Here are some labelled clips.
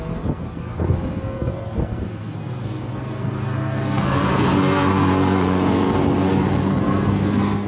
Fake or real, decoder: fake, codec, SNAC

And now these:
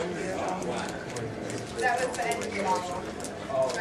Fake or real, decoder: real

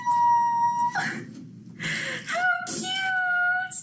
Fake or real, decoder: real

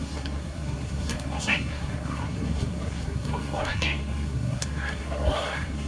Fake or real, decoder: fake, codec, SNAC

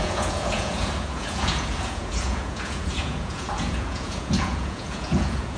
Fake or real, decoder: fake, vocoder, Vocos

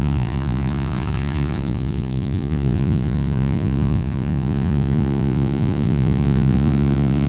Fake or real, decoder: fake, vocoder, Vocos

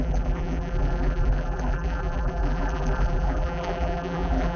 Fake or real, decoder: fake, vocoder, BigVGAN v2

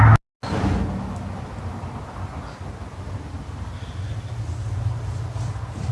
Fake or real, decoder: real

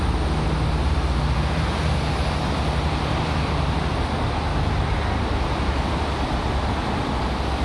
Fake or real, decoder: real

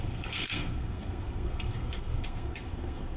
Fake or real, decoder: fake, codec, SNAC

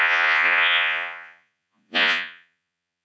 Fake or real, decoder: fake, vocoder, Vocos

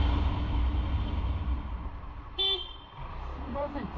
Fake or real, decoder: real